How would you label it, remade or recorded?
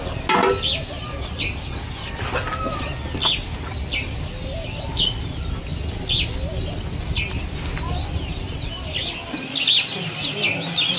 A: recorded